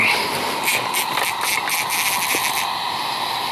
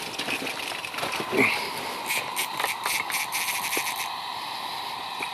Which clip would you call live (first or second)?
first